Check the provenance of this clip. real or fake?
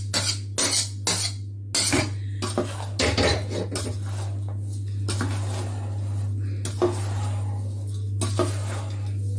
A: real